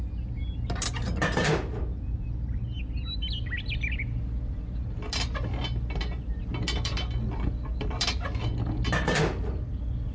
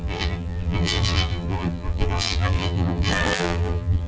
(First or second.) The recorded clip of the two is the first